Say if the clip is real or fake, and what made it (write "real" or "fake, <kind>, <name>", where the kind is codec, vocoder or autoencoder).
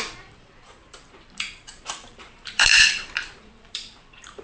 fake, vocoder, BigVGAN v2